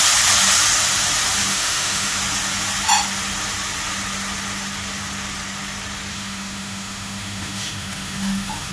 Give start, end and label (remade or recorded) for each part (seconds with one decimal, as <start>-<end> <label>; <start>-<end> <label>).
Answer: 0.0-1.5 recorded; 1.5-2.2 remade; 2.2-6.1 recorded; 6.1-8.7 remade